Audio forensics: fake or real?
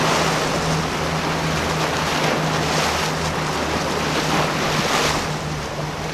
real